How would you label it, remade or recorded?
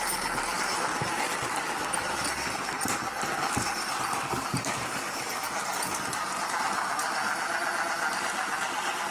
recorded